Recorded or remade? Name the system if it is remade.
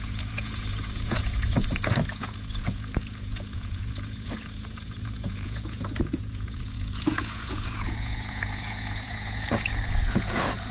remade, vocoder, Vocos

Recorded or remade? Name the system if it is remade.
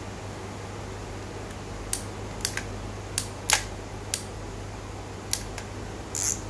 recorded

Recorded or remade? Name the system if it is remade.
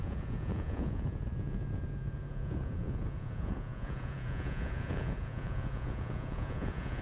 remade, vocoder, Vocos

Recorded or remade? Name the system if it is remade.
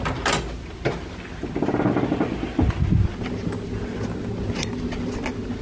recorded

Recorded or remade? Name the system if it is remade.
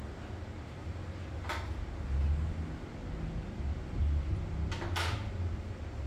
recorded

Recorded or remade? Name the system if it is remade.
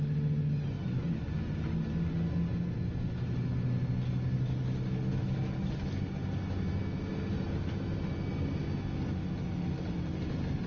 recorded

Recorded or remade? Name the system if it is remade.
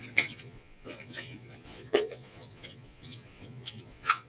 remade, vocoder, Vocos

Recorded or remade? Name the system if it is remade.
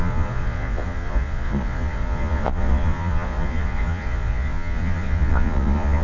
remade, vocoder, Vocos